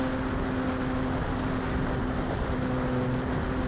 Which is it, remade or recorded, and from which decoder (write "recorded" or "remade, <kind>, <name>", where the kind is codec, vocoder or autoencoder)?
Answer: recorded